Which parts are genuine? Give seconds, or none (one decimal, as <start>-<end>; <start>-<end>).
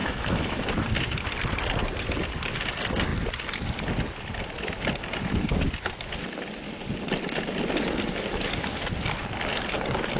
0.6-10.2